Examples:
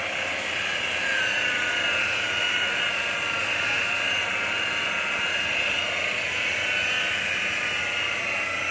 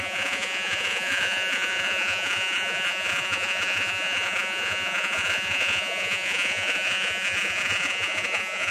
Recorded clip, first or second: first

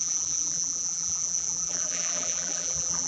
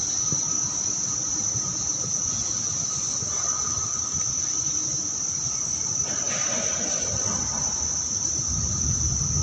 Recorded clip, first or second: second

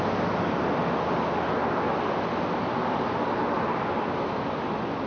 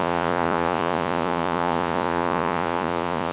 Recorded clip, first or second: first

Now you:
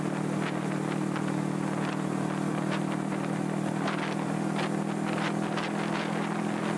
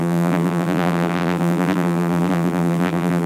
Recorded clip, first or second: first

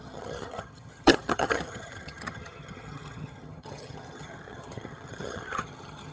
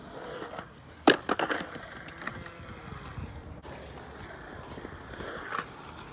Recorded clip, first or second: second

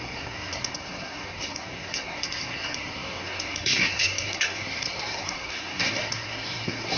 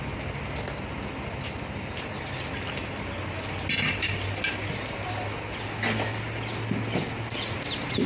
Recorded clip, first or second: second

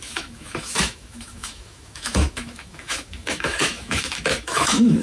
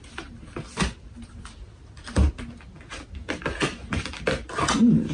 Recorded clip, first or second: second